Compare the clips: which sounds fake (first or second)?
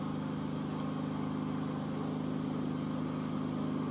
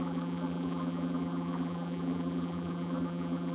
second